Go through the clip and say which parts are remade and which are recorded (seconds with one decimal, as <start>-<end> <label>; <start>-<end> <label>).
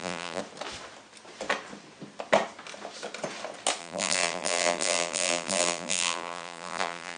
0.0-0.4 remade; 0.4-3.8 recorded; 3.8-7.2 remade